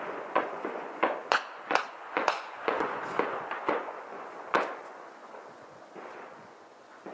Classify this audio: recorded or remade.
remade